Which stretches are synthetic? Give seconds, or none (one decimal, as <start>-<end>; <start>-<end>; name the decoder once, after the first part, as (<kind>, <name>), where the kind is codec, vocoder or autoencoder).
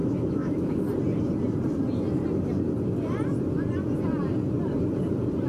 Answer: 0.0-0.8 (autoencoder, DAC-VAE)